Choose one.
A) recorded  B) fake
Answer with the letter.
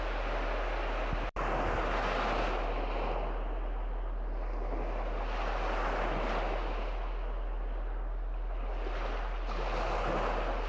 A